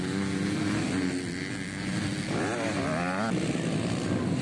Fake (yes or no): no